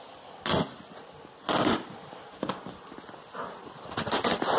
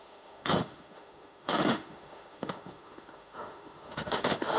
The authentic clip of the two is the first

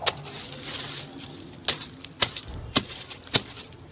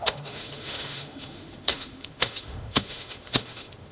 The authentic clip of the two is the first